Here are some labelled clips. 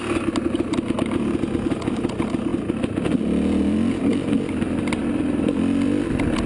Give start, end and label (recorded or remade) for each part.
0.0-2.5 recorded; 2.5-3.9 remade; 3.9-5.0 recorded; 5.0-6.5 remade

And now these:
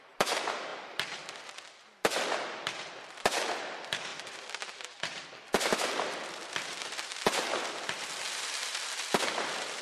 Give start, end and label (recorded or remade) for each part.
0.0-9.8 remade

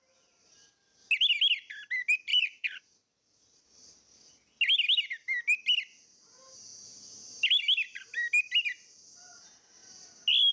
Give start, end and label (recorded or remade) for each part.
0.0-2.3 recorded; 2.3-2.8 remade; 2.8-10.5 recorded

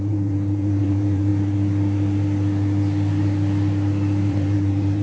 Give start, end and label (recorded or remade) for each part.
0.0-1.3 remade; 1.3-4.3 recorded; 4.3-5.0 remade

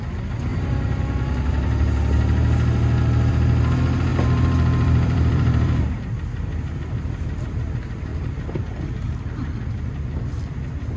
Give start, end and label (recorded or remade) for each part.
0.0-4.1 recorded; 4.1-5.8 remade; 5.8-8.1 recorded; 8.1-8.6 remade; 8.6-11.0 recorded